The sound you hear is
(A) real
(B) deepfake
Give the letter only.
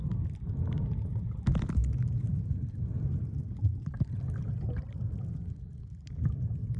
A